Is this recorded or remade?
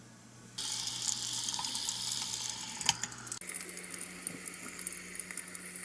recorded